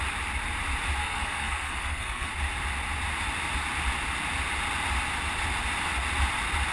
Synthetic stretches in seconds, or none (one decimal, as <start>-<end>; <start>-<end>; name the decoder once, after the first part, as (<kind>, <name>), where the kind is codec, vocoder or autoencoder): 1.0-2.3 (codec, SNAC)